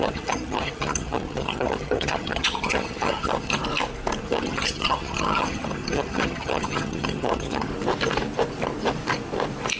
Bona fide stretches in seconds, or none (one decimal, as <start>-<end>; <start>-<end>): 3.6-4.2; 7.7-9.8